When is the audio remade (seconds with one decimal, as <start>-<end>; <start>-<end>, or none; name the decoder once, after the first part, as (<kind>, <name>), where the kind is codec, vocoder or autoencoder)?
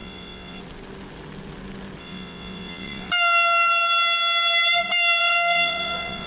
0.0-0.6 (vocoder, WaveNeXt); 2.0-3.1; 5.2-6.3